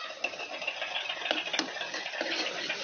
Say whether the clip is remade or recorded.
recorded